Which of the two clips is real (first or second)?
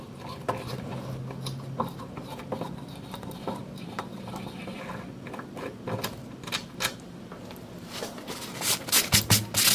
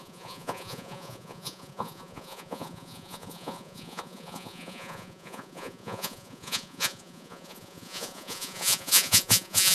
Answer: first